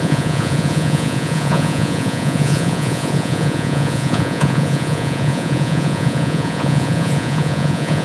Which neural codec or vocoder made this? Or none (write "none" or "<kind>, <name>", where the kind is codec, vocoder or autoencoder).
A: vocoder, Vocos